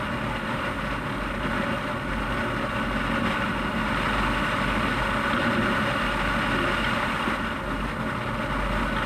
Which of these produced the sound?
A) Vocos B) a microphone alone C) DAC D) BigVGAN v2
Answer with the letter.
B